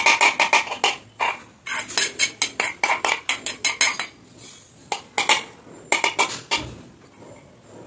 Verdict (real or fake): real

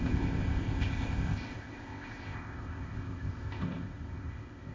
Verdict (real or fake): fake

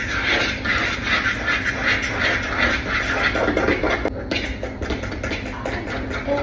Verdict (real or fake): real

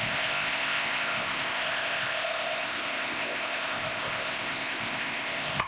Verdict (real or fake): fake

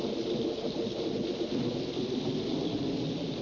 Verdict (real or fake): real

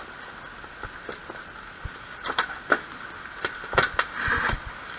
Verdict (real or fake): real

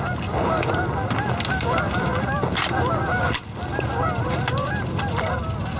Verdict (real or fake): real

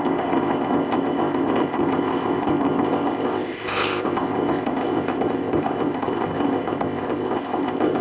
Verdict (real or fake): fake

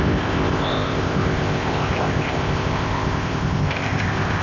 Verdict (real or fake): fake